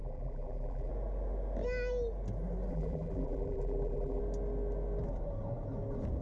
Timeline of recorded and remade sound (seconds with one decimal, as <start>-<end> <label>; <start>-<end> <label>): 0.0-0.9 remade; 0.9-2.7 recorded; 2.7-4.2 remade; 4.2-6.2 recorded